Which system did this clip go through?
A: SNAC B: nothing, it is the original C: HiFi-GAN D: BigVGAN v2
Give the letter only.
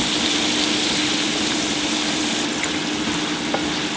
B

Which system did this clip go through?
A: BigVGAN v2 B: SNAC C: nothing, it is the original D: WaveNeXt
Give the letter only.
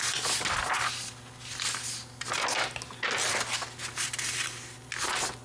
C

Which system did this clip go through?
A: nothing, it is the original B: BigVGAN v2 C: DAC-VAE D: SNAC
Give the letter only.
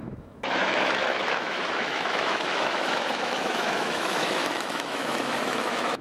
C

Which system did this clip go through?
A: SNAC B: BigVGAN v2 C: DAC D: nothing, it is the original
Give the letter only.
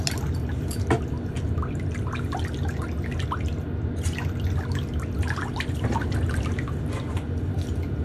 D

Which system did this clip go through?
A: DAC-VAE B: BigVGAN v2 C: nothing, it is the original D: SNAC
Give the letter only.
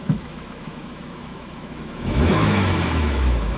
A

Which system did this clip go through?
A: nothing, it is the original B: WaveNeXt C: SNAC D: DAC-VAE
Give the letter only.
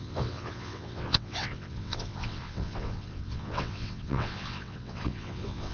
B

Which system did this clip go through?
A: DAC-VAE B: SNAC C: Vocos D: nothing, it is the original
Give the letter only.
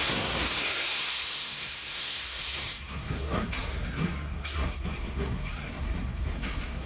B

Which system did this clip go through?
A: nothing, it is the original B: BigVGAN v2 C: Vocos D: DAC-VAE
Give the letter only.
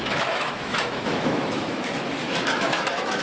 D